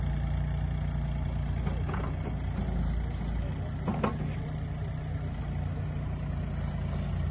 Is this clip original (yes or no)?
yes